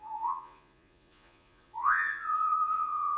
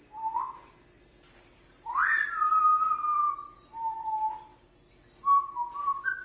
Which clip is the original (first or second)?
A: second